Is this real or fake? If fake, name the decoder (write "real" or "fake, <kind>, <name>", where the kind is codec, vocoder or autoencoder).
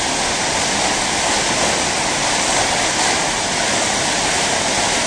real